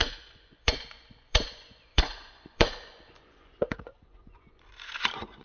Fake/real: fake